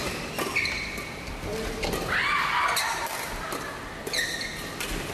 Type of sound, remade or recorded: recorded